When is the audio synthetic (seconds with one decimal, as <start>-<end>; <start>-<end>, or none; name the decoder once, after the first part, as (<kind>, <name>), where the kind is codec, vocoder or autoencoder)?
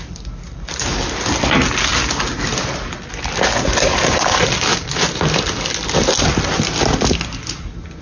none